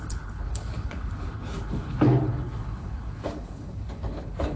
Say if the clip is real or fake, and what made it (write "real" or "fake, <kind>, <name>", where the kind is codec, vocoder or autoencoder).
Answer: fake, codec, HILCodec